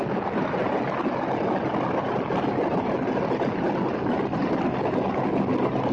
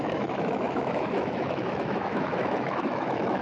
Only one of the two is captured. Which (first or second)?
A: first